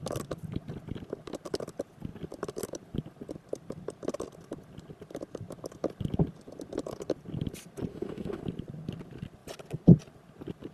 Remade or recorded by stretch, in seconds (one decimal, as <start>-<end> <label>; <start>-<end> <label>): 0.0-7.9 recorded; 7.9-8.4 remade; 8.4-10.7 recorded